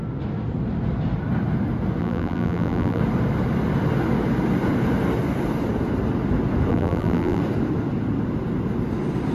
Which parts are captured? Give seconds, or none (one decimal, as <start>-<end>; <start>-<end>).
0.0-2.0; 3.0-6.7; 7.4-9.3